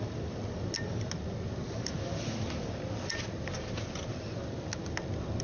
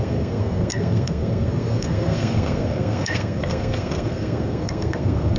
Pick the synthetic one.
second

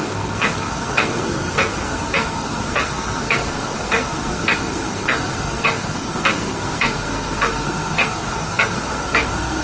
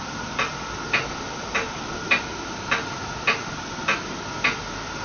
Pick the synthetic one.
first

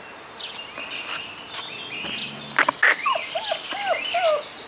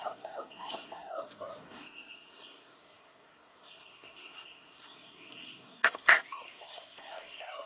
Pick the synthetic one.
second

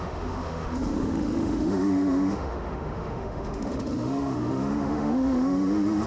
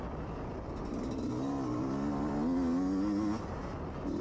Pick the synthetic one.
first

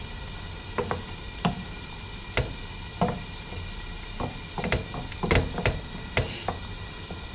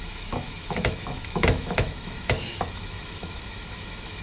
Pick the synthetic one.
second